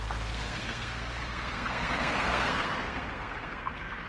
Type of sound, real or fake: fake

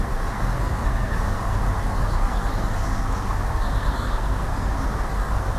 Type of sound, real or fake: fake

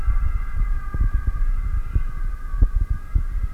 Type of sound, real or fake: real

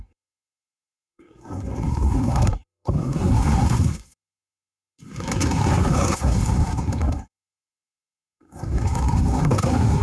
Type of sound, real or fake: fake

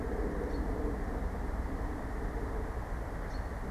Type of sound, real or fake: real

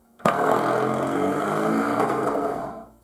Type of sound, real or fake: fake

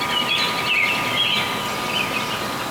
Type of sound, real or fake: real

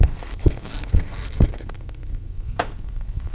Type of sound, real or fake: fake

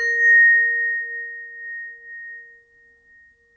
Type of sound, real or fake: real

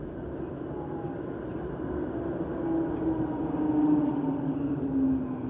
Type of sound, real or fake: real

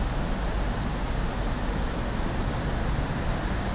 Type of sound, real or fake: real